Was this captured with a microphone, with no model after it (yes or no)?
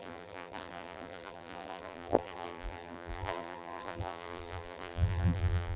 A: no